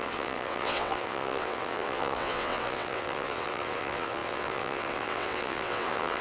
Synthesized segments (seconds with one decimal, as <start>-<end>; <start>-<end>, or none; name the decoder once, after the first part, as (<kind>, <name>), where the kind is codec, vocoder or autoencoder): 0.0-6.2 (vocoder, WaveNeXt)

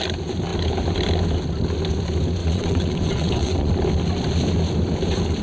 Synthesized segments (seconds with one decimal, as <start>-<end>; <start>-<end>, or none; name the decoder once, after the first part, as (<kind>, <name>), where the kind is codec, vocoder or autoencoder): 2.4-3.7 (vocoder, WaveNeXt)

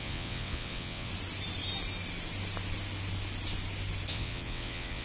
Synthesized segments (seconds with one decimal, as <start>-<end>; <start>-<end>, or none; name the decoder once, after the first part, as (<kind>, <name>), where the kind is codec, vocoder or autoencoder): 0.0-1.1 (vocoder, WaveNeXt); 4.1-5.0